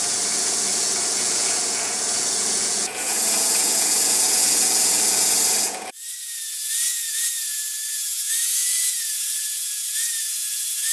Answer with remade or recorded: remade